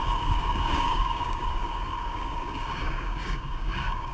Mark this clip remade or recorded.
remade